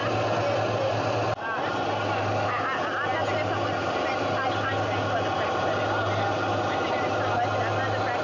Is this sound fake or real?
real